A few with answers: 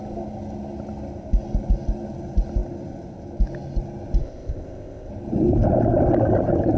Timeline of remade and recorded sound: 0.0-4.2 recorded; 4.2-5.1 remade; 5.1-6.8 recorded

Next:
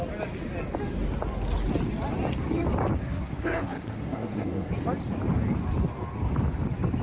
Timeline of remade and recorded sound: 0.0-3.0 recorded; 3.0-4.7 remade; 4.7-7.0 recorded